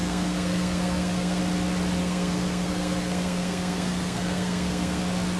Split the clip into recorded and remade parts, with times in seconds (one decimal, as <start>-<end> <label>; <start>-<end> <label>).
0.0-1.4 remade; 1.4-2.0 recorded; 2.0-5.0 remade; 5.0-5.4 recorded

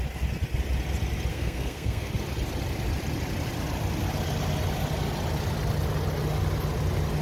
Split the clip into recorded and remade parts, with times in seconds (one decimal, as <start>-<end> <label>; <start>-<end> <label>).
0.0-1.3 recorded; 1.3-2.1 remade; 2.1-7.2 recorded